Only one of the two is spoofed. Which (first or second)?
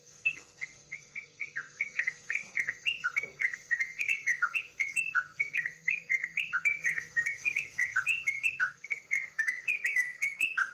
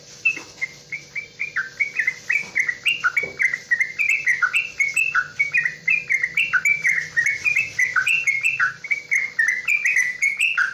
first